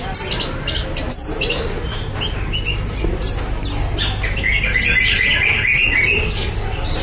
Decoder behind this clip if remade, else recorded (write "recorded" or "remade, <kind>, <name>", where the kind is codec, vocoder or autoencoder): recorded